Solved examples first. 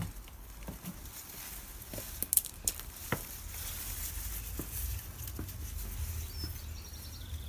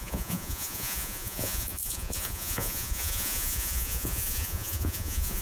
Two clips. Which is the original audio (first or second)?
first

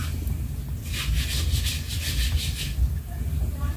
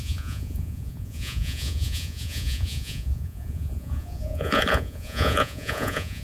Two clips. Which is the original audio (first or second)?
first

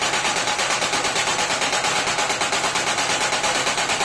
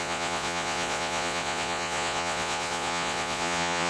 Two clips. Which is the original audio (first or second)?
first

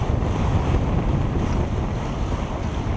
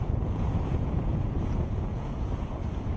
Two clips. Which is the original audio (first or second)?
first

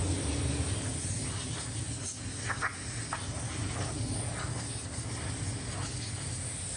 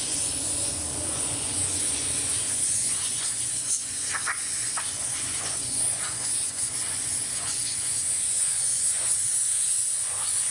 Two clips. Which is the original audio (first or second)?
first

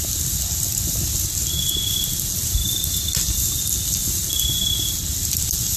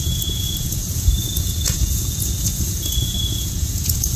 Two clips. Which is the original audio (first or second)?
first